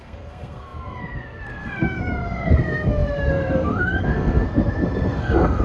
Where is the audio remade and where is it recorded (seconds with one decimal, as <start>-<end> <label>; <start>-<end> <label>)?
0.0-5.6 remade

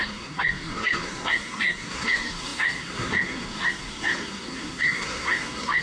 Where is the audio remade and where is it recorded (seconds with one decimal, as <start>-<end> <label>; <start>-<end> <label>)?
0.0-5.8 remade

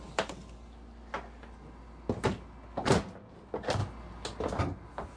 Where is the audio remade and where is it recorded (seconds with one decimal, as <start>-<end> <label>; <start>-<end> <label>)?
0.0-5.2 recorded

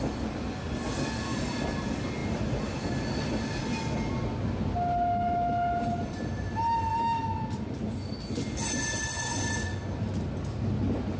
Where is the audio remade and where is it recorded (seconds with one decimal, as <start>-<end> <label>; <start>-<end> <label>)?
0.0-11.2 recorded

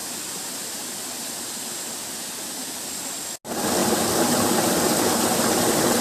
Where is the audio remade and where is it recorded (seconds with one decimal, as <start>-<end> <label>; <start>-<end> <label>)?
0.0-6.0 recorded

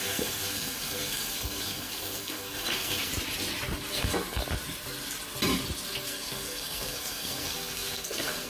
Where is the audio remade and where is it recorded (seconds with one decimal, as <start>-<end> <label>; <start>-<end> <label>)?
0.0-3.1 remade; 3.1-3.9 recorded; 3.9-4.4 remade; 4.4-6.0 recorded; 6.0-8.5 remade